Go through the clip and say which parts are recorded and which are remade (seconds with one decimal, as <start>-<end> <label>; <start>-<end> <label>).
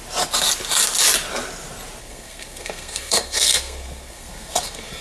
0.0-2.0 recorded; 2.0-5.0 remade